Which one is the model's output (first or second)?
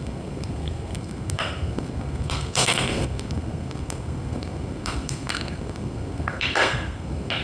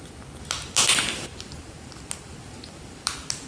first